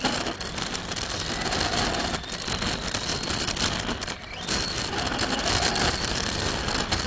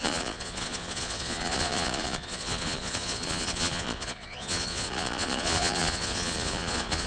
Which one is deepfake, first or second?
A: second